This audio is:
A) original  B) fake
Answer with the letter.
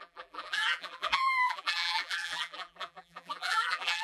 B